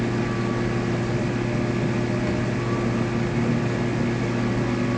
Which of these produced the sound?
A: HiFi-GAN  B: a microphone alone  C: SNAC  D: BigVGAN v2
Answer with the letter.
B